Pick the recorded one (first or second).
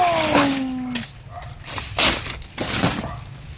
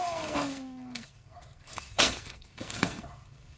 first